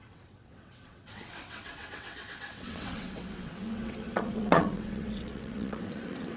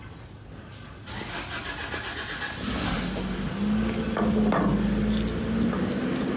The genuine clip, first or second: second